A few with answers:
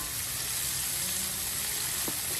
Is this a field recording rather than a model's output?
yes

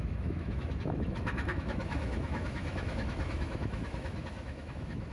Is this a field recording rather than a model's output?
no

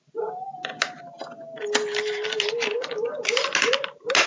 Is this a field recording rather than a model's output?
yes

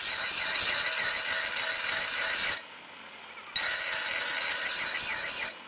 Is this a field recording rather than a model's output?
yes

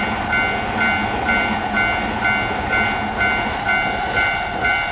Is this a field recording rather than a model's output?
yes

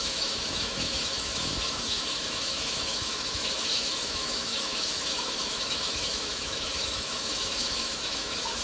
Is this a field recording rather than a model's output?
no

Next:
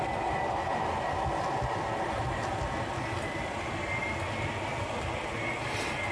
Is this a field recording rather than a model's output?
yes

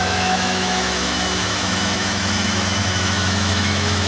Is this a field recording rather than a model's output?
no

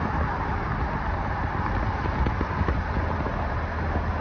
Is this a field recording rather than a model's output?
yes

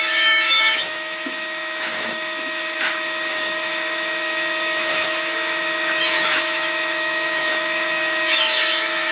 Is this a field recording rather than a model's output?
no